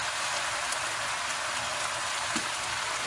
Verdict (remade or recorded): recorded